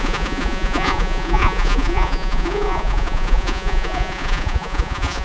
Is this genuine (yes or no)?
no